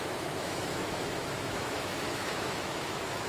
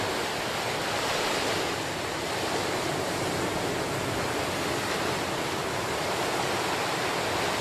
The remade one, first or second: first